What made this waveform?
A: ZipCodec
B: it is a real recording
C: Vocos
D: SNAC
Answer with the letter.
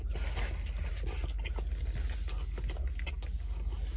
B